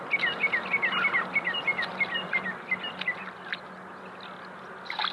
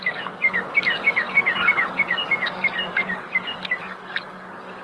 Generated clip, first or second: second